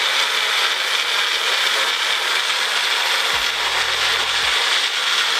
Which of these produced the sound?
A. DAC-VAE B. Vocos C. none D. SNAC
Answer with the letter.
C